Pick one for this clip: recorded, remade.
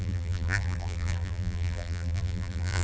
remade